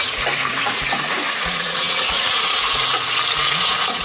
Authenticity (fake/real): fake